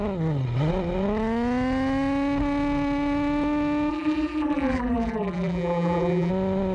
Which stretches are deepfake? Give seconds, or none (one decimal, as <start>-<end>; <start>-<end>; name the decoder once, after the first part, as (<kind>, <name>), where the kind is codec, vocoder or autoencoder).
3.9-6.3 (vocoder, BigVGAN v2)